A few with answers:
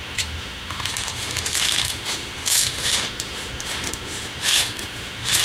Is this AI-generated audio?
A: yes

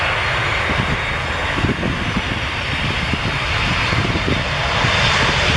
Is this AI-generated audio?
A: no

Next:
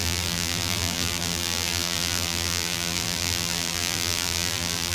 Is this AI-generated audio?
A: yes